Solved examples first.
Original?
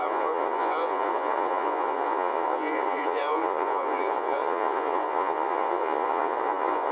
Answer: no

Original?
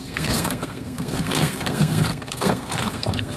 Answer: no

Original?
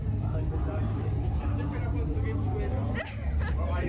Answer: yes